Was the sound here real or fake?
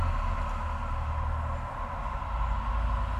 real